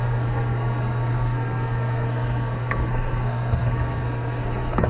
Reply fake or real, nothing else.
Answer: fake